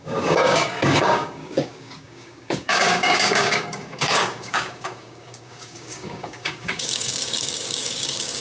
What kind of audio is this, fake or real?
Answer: fake